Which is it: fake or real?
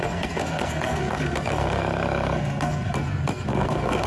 fake